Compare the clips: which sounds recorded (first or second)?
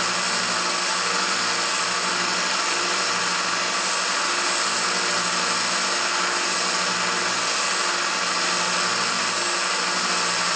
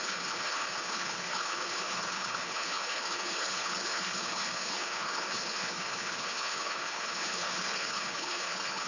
first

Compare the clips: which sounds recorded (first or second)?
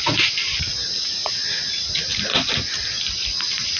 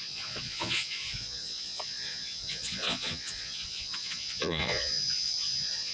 first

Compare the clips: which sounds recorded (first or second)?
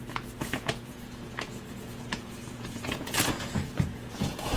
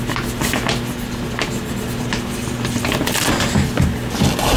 second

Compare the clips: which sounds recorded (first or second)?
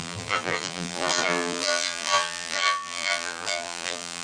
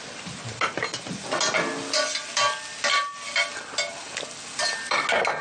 second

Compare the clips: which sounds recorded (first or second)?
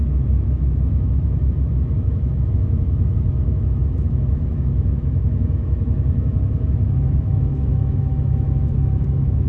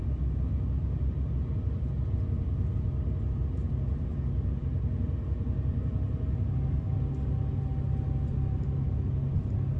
second